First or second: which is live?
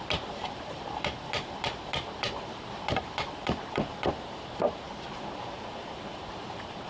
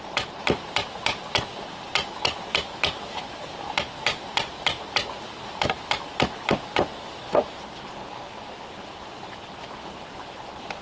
second